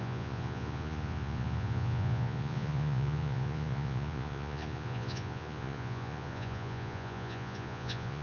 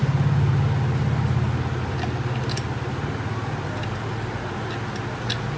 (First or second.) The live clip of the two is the second